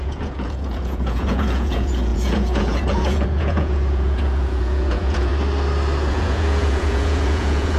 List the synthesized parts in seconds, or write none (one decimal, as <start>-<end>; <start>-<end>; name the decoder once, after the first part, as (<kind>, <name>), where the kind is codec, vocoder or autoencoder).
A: 0.0-5.3 (vocoder, Vocos); 6.1-7.8